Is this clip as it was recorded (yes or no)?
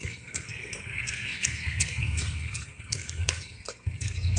no